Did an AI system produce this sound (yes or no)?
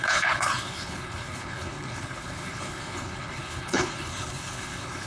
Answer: yes